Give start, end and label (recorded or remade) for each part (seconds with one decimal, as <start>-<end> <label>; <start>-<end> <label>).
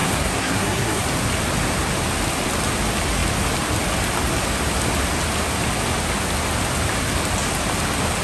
0.0-1.0 remade; 1.0-8.2 recorded